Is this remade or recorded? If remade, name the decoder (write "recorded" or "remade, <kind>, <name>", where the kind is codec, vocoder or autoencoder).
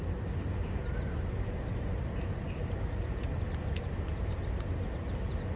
recorded